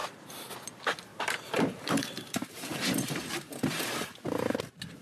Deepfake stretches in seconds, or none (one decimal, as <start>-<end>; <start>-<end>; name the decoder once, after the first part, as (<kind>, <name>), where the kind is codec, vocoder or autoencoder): 0.0-0.5 (vocoder, BigVGAN v2); 1.1-4.1